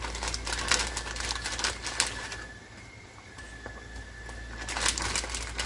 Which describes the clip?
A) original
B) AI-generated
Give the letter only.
A